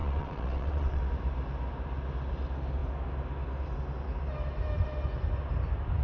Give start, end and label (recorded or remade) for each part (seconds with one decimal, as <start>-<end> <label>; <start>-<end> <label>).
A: 0.0-1.0 remade; 1.0-6.0 recorded